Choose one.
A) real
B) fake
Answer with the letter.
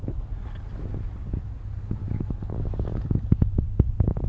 A